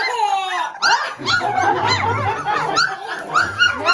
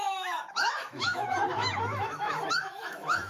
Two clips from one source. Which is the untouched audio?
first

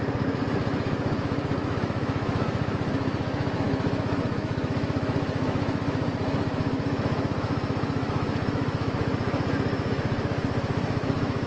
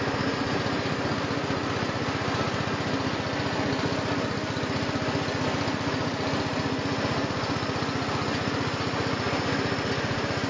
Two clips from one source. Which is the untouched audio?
second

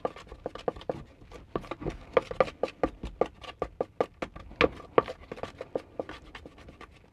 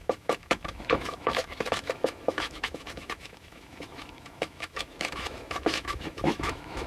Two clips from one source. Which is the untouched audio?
first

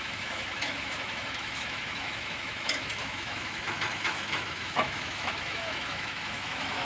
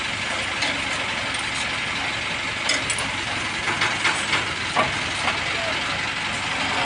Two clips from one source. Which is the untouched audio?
second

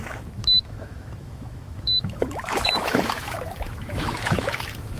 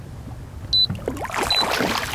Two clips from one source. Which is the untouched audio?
second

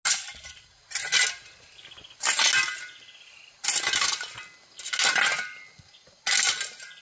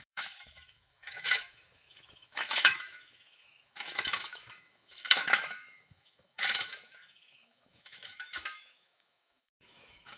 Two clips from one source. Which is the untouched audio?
first